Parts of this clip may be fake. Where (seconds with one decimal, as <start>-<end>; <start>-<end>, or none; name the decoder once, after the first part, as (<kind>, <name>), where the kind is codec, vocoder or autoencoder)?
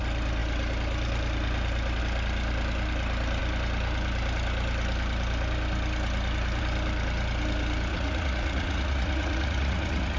7.9-10.2 (vocoder, Vocos)